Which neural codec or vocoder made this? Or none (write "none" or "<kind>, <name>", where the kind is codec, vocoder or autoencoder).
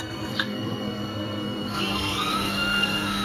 codec, SNAC